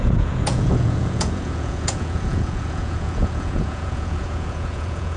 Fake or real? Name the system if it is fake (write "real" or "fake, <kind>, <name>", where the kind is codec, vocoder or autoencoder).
fake, vocoder, Vocos